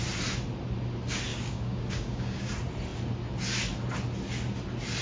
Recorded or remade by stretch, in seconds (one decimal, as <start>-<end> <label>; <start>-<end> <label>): 0.0-1.3 recorded; 1.3-2.5 remade; 2.5-5.0 recorded